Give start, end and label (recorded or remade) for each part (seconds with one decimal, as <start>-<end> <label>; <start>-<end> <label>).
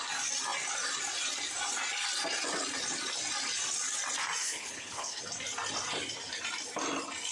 0.0-4.4 recorded; 4.4-5.2 remade; 5.2-7.3 recorded